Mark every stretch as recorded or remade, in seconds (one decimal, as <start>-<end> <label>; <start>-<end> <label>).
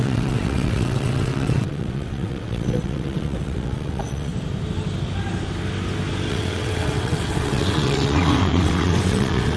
0.0-4.3 remade; 4.3-6.3 recorded; 6.3-9.6 remade